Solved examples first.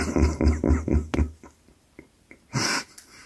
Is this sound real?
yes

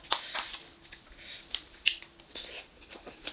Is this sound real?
yes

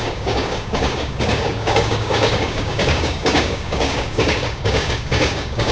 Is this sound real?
no